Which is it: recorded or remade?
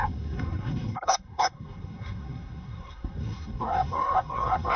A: remade